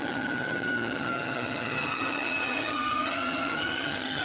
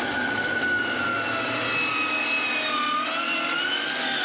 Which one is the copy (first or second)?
first